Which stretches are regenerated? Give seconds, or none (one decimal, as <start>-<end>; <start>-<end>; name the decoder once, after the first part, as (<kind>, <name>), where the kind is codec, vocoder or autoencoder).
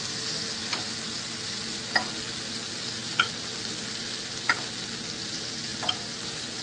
none